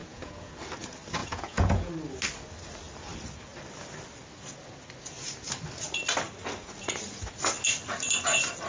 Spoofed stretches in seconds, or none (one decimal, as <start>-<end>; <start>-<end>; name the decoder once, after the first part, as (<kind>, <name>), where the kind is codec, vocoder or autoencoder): 0.0-0.5 (vocoder, Vocos); 1.2-1.9